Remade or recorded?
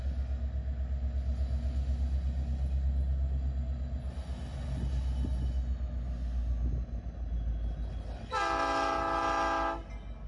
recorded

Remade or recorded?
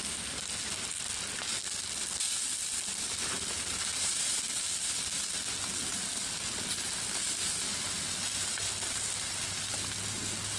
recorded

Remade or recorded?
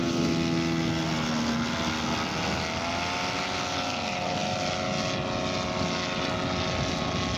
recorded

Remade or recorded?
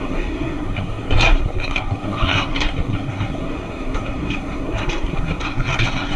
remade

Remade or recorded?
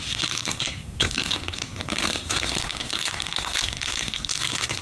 remade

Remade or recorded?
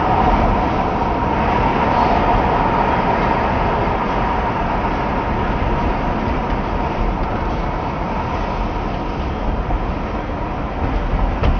recorded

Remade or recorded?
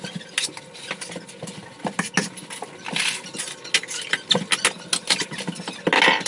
recorded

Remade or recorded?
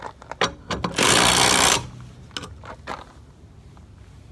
recorded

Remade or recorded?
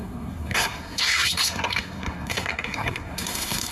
remade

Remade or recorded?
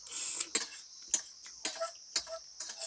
recorded